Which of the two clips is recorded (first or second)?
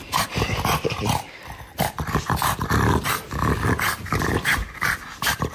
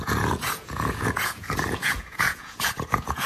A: first